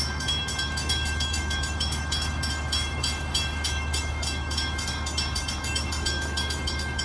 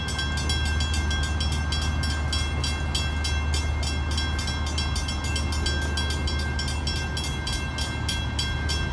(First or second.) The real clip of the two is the second